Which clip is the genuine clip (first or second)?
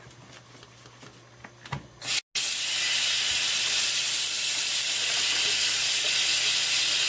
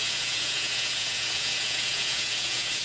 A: first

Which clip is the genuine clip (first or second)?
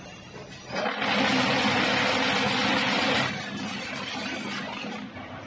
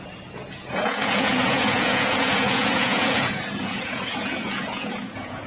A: first